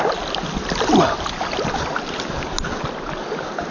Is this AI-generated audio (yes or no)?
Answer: no